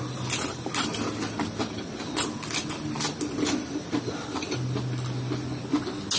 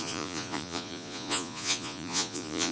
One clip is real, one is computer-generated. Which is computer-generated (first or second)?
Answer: second